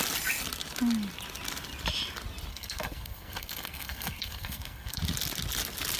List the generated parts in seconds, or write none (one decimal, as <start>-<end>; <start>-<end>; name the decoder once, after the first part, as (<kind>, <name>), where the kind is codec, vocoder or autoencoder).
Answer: 2.5-5.0 (codec, SNAC)